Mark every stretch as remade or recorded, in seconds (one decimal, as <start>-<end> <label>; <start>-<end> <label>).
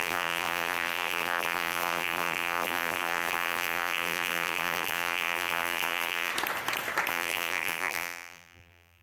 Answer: 0.0-6.3 remade; 6.3-7.1 recorded; 7.1-9.0 remade